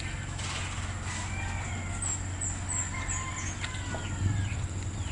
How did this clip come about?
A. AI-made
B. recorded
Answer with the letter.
B